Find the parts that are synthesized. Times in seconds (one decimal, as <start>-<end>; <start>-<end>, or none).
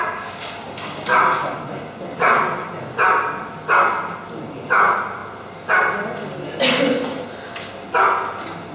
none